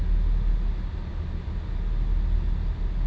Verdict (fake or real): real